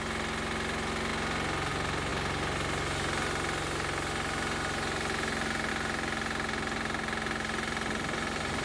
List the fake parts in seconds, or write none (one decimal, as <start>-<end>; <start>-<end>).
none